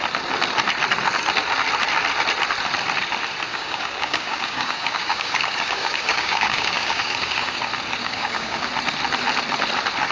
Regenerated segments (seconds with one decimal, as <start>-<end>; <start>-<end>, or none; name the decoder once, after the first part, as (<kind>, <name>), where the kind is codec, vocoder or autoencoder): 3.5-7.6 (codec, DAC); 8.0-8.7